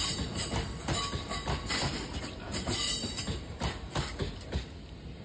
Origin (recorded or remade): recorded